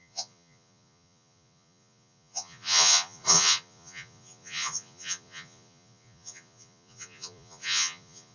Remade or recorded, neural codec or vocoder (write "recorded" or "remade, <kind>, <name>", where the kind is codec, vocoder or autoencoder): remade, vocoder, Vocos